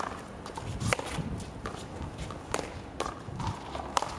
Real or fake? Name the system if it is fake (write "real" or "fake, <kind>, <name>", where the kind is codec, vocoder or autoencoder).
real